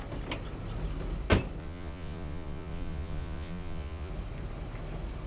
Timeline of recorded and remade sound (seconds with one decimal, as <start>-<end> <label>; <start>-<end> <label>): 0.0-1.6 recorded; 1.6-4.1 remade; 4.1-5.3 recorded